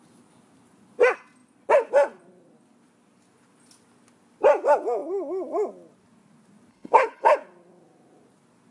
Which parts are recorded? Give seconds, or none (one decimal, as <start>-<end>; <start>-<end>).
0.0-6.7; 7.4-8.7